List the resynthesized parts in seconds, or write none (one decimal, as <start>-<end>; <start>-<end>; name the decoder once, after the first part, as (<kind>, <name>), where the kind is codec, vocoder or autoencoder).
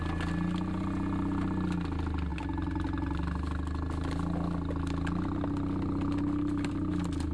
none